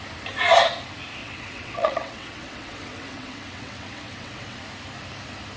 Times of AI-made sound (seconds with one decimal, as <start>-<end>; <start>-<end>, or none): 1.2-4.6